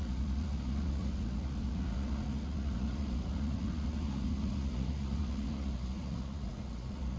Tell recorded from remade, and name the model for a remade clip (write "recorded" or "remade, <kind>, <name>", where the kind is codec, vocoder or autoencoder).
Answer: remade, vocoder, Vocos